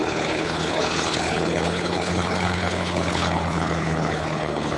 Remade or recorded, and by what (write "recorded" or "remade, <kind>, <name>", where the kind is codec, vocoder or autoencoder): remade, codec, HILCodec